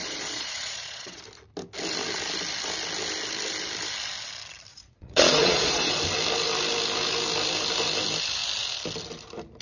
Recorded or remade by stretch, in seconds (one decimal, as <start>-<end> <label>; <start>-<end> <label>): 0.0-1.2 remade; 1.2-4.7 recorded; 4.7-6.0 remade; 6.0-9.6 recorded